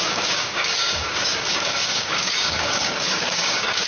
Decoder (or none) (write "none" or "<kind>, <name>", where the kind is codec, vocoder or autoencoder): codec, DAC